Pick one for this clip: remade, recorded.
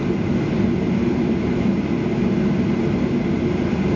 recorded